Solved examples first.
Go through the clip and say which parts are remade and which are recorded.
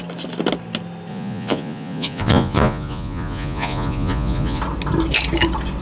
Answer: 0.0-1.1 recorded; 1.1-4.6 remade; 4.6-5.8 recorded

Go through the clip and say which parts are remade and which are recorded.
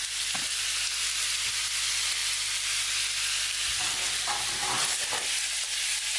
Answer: 0.0-6.2 recorded